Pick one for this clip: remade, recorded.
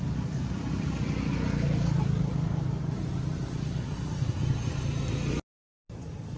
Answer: recorded